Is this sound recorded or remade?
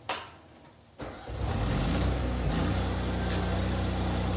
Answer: recorded